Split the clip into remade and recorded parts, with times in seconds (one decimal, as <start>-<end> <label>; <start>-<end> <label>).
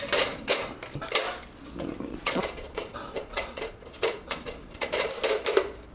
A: 0.0-2.1 recorded; 2.1-5.1 remade; 5.1-5.9 recorded